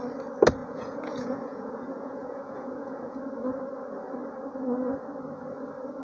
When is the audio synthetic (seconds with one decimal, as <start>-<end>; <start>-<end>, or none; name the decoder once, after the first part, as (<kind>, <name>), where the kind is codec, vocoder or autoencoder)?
0.6-3.2 (vocoder, Vocos)